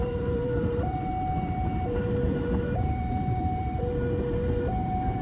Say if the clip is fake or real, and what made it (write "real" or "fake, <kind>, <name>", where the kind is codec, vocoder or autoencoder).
fake, vocoder, BigVGAN v2